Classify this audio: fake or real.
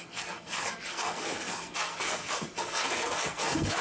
fake